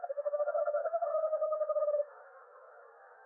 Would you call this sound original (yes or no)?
no